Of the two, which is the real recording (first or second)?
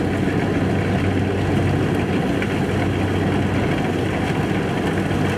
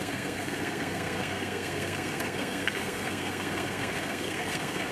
first